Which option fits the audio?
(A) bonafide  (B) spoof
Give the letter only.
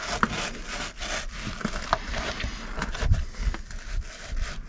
A